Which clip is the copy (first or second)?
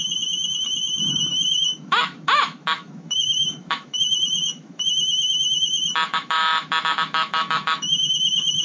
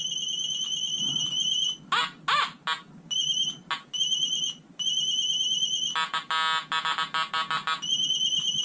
first